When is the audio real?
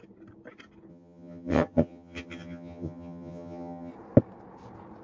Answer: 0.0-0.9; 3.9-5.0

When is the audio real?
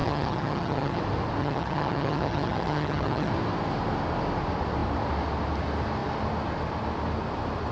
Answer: 1.0-1.4; 3.3-7.7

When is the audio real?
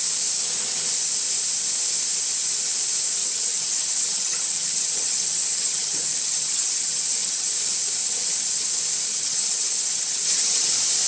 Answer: 0.0-3.2; 7.5-8.0; 8.7-9.1; 10.7-11.1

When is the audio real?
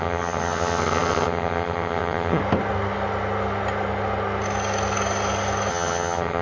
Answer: 2.4-5.7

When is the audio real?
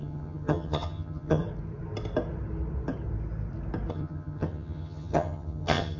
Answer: 1.4-3.9